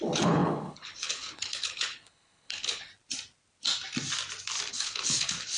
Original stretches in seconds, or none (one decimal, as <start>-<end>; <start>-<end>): 2.9-4.7